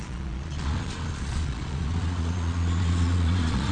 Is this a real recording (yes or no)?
no